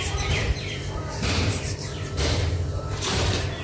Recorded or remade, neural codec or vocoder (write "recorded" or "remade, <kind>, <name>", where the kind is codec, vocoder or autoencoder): remade, vocoder, BigVGAN v2